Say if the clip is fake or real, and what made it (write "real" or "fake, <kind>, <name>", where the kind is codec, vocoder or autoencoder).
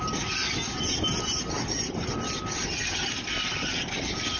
real